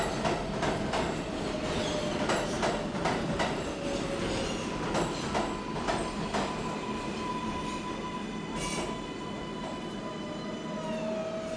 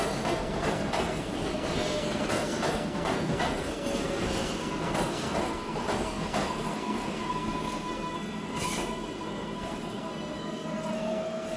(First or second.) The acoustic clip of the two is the first